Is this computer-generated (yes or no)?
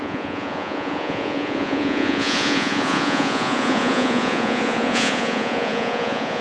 yes